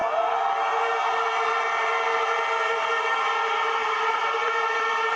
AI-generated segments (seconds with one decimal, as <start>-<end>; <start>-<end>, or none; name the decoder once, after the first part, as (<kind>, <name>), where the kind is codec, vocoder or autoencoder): 3.8-4.5 (vocoder, BigVGAN v2)